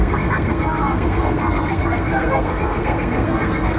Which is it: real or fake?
fake